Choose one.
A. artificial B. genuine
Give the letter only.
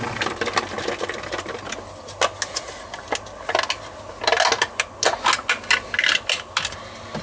B